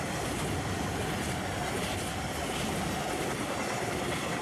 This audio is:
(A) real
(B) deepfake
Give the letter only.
A